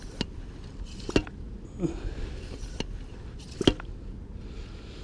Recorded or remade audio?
recorded